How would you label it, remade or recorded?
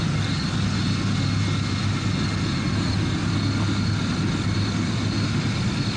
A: recorded